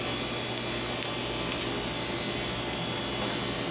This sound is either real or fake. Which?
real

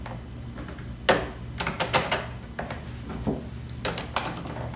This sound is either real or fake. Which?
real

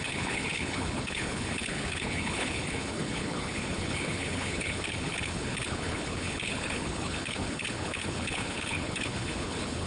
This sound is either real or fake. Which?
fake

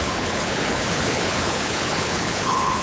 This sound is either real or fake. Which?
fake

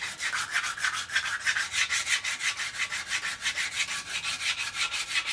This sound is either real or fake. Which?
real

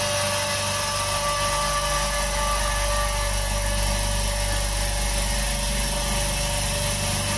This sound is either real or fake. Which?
real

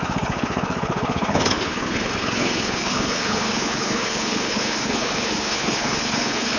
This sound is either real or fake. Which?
fake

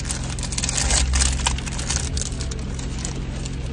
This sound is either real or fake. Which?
real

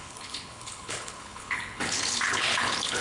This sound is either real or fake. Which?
fake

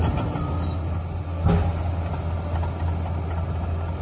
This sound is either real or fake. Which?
real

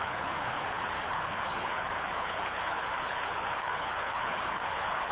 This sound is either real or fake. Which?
fake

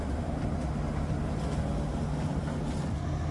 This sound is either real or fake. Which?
real